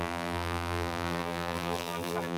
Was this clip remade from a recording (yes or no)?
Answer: yes